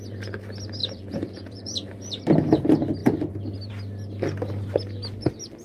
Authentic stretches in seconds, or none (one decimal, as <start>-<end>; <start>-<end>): 0.0-0.8; 1.9-5.6

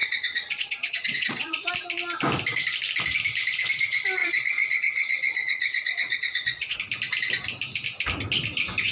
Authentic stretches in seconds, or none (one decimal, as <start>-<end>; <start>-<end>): 1.7-4.2; 6.8-8.9

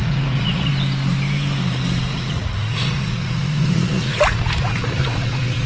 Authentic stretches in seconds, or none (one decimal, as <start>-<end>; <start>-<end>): 0.7-2.1